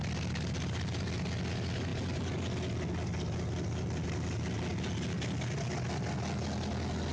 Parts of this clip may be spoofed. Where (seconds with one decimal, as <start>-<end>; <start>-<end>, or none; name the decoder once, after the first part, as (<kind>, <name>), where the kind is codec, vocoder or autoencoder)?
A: none